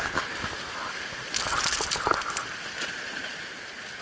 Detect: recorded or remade recorded